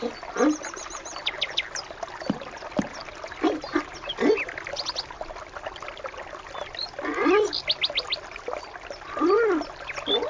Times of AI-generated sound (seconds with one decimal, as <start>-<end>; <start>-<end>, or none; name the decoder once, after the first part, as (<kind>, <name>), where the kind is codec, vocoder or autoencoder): none